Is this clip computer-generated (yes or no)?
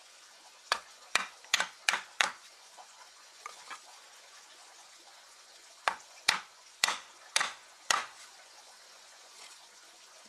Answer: yes